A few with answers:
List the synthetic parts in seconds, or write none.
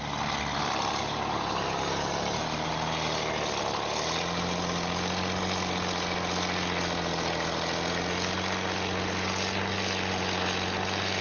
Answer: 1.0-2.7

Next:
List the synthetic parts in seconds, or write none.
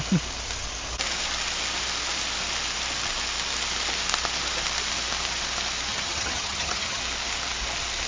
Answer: 5.9-7.0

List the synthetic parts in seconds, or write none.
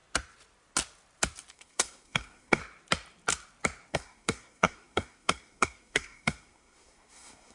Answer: 1.5-2.6; 3.9-7.5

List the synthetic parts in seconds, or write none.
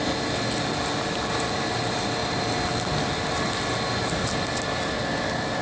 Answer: none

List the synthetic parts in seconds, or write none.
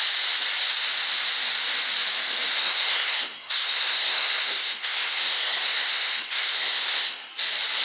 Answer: 2.6-7.3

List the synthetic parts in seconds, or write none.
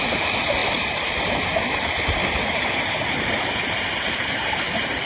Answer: 0.0-5.1